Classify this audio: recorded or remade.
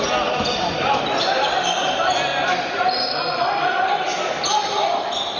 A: recorded